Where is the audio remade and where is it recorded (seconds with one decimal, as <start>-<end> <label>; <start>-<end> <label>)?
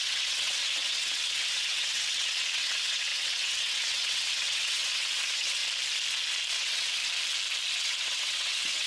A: 0.0-5.6 remade; 5.6-6.5 recorded; 6.5-7.0 remade; 7.0-7.8 recorded; 7.8-8.9 remade